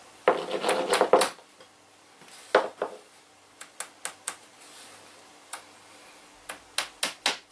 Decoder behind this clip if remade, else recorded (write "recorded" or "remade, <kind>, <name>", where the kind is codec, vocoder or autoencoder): recorded